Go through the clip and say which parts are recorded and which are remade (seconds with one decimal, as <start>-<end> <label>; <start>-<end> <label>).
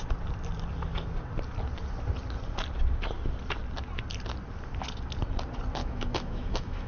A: 0.0-5.8 recorded; 5.8-6.9 remade